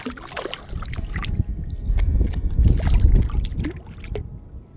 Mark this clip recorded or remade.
recorded